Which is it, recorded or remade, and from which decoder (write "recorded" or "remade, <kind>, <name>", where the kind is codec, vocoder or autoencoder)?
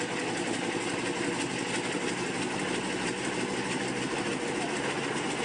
recorded